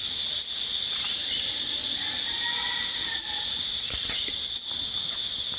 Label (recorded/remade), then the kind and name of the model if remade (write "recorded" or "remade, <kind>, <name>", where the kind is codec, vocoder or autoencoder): recorded